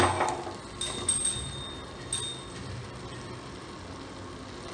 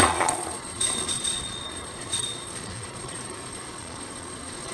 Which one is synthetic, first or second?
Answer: second